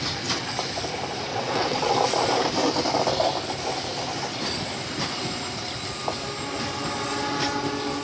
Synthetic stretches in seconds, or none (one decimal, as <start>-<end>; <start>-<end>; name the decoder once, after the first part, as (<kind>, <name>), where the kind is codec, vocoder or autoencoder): 1.3-1.9 (vocoder, WaveNeXt)